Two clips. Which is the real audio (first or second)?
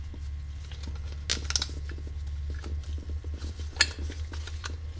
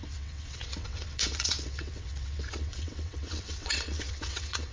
first